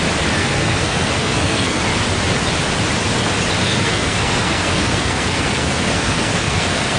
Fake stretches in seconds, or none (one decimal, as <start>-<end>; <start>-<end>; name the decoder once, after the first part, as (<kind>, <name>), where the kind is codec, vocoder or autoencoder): 0.4-1.8 (codec, SNAC); 3.6-7.0